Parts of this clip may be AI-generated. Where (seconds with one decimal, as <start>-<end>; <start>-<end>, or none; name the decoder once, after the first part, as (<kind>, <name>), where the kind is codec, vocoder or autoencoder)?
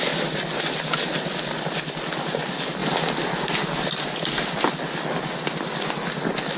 none